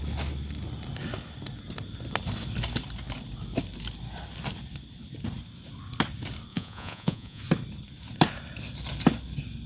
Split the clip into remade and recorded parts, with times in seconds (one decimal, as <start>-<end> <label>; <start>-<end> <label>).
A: 0.0-6.5 recorded; 6.5-7.4 remade; 7.4-9.7 recorded